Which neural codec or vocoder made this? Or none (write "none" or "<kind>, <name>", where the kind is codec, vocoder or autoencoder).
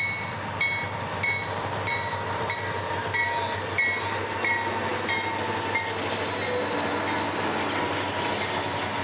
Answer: none